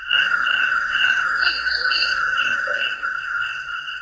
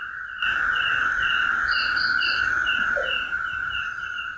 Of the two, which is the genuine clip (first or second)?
second